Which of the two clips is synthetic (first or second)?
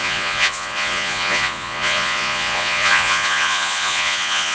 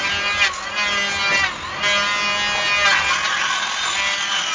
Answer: first